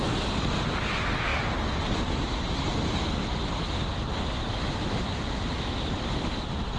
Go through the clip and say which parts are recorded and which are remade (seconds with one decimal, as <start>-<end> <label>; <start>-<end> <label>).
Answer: 0.0-1.3 recorded; 1.3-3.4 remade; 3.4-4.4 recorded; 4.4-5.0 remade; 5.0-6.8 recorded